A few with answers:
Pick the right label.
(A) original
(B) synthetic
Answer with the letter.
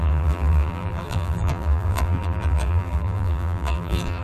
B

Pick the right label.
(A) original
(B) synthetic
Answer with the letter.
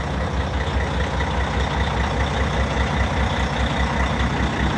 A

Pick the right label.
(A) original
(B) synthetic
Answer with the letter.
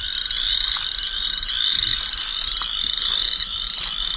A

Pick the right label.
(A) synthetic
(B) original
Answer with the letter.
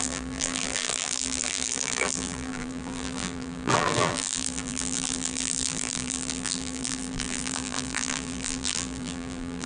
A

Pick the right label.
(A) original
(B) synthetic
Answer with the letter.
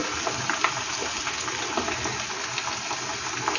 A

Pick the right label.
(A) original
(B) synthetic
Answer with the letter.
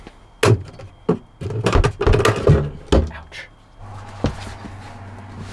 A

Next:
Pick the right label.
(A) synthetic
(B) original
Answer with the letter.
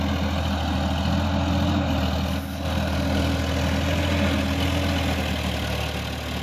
B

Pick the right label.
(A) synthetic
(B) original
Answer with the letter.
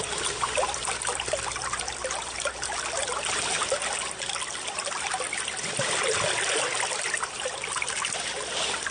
B